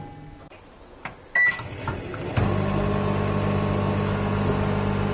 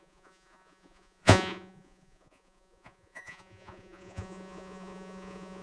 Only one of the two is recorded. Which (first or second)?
first